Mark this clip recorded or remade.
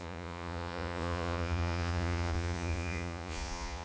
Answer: remade